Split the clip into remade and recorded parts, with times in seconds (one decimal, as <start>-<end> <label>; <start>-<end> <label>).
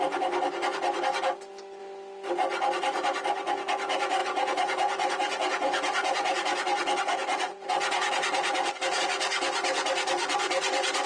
0.0-4.2 recorded; 4.2-9.0 remade; 9.0-11.1 recorded